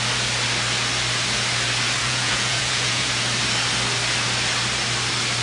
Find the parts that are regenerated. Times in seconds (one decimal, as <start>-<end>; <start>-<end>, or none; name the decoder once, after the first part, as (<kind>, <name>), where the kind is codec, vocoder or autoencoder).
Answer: 2.0-3.1 (vocoder, Vocos)